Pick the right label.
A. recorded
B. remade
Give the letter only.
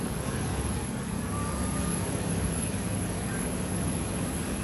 B